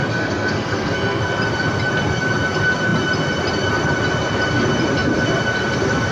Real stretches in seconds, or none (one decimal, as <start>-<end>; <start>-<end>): 1.2-6.1